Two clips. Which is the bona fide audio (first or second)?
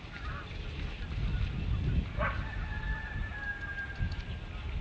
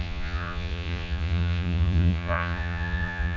first